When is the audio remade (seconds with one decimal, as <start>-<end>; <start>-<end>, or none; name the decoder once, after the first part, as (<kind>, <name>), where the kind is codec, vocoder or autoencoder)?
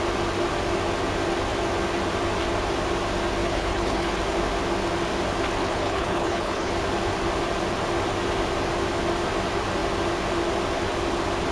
3.4-4.2 (codec, HILCodec); 5.6-6.7